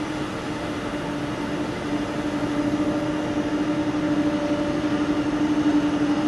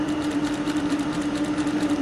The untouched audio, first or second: first